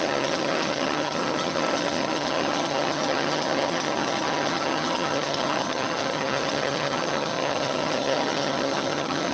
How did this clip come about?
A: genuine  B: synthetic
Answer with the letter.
B